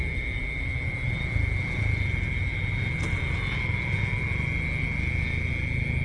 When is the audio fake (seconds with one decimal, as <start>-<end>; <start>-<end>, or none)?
none